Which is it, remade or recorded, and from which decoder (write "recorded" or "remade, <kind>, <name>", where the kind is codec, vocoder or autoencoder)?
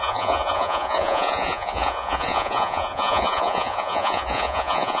remade, vocoder, Vocos